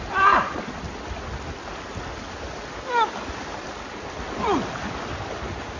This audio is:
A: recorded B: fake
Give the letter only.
A